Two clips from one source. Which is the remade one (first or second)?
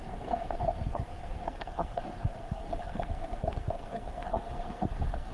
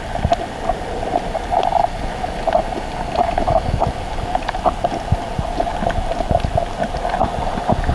first